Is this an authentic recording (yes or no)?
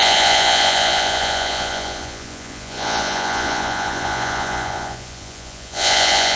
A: no